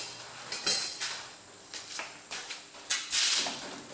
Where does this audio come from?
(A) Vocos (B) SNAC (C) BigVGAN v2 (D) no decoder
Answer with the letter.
D